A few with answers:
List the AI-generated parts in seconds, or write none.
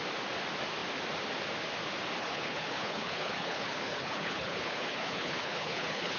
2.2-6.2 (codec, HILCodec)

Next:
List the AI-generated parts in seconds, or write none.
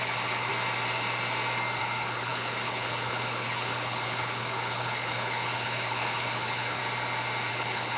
0.0-0.5 (codec, HILCodec); 1.8-6.8; 7.5-8.0